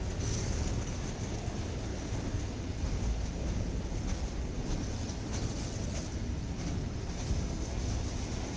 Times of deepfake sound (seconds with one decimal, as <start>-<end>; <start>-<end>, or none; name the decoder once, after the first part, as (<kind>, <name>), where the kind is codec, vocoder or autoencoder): none